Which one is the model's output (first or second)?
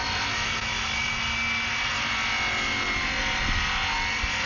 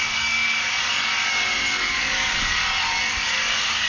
second